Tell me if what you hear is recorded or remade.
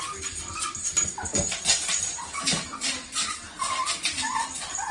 recorded